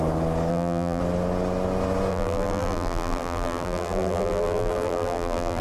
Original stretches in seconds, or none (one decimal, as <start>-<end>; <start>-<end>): 0.0-0.5; 1.0-2.1